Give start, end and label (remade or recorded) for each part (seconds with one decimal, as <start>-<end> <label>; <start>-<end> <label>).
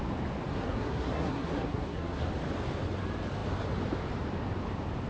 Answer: 0.0-0.5 recorded; 0.5-2.2 remade; 2.2-5.1 recorded